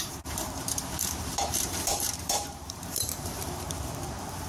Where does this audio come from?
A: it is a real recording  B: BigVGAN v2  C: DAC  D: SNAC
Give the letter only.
B